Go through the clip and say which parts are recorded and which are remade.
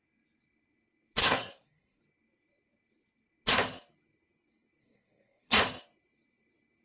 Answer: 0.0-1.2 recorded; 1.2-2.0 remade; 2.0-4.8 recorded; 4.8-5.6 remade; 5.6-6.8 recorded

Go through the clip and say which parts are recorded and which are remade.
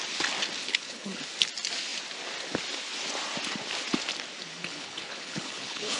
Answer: 0.0-0.6 recorded; 0.6-1.2 remade; 1.2-4.6 recorded; 4.6-6.0 remade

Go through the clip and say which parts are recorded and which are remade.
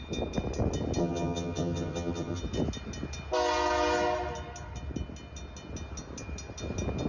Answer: 0.0-1.0 recorded; 1.0-2.4 remade; 2.4-7.1 recorded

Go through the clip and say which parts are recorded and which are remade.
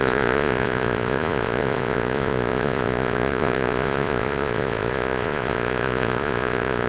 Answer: 0.0-6.9 remade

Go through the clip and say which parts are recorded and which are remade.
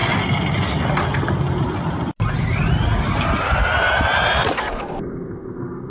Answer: 0.0-5.9 recorded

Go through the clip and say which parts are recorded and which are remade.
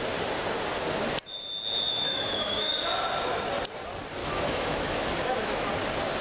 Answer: 0.0-1.9 recorded; 1.9-2.7 remade; 2.7-4.2 recorded; 4.2-5.7 remade; 5.7-6.2 recorded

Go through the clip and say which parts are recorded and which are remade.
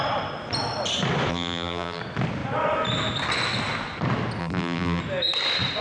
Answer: 0.0-1.3 recorded; 1.3-2.0 remade; 2.0-4.4 recorded; 4.4-5.0 remade; 5.0-5.8 recorded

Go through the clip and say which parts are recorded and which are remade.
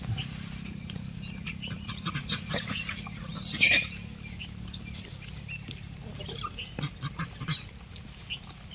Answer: 0.0-0.7 recorded; 0.7-3.5 remade; 3.5-8.7 recorded